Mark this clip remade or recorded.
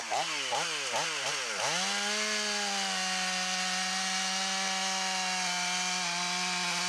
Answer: recorded